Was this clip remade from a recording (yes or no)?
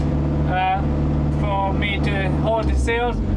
no